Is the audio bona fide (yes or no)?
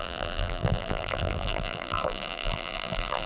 no